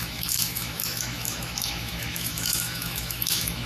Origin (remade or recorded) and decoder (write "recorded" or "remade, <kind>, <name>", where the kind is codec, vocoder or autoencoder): remade, autoencoder, DAC-VAE